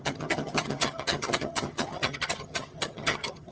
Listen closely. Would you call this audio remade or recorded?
remade